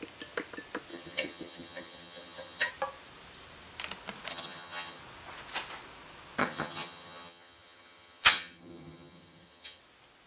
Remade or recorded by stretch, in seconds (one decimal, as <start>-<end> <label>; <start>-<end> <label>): 0.0-0.9 recorded; 0.9-2.7 remade; 2.7-4.3 recorded; 4.3-5.0 remade; 5.0-6.4 recorded; 6.4-9.8 remade; 9.8-10.3 recorded